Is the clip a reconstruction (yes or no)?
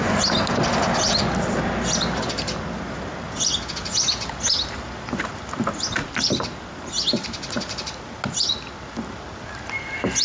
no